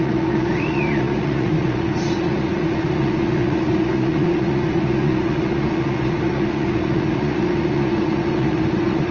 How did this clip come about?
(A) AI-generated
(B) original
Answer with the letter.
A